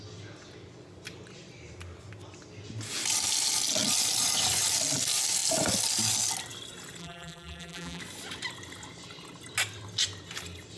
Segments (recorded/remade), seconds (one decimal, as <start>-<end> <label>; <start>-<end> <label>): 0.0-7.0 recorded; 7.0-8.0 remade; 8.0-10.8 recorded